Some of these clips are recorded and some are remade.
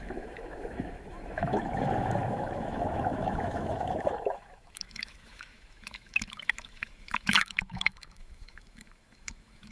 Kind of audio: remade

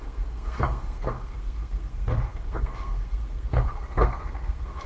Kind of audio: remade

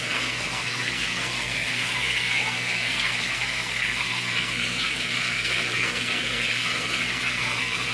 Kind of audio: remade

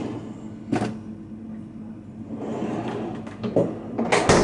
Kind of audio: recorded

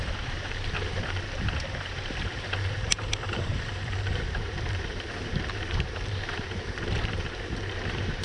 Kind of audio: remade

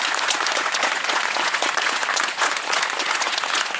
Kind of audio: remade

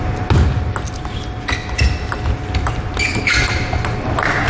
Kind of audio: recorded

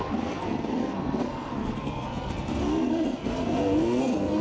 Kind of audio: remade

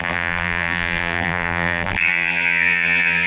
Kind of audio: remade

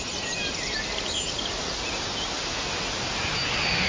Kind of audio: recorded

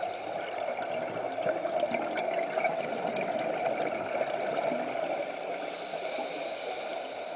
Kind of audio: recorded